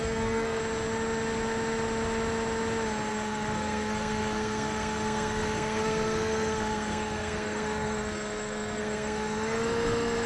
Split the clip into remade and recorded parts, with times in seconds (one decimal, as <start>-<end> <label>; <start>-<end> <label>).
0.0-0.6 remade; 0.6-3.1 recorded; 3.1-10.3 remade